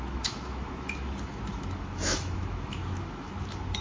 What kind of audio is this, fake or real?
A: fake